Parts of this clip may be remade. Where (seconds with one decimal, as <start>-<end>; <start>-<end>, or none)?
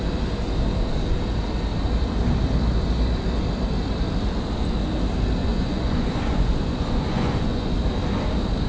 5.4-7.7